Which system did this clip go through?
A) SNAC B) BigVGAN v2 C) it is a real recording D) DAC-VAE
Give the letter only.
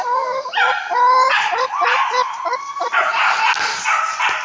C